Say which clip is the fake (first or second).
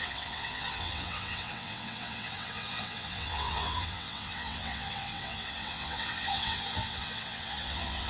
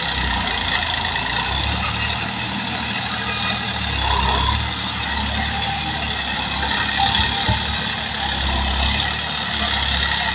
first